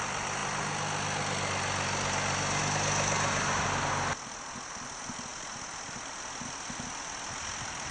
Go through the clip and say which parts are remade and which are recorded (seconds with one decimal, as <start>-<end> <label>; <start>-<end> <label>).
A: 0.0-7.9 recorded